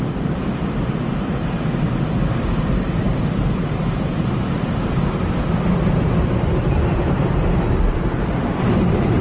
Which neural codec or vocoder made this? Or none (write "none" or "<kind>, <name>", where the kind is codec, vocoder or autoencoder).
vocoder, BigVGAN v2